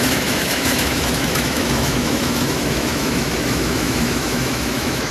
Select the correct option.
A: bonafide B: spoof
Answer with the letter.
B